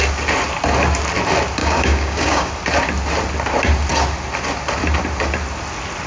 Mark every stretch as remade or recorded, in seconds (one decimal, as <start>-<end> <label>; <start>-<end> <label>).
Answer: 0.0-1.6 recorded; 1.6-2.5 remade; 2.5-6.1 recorded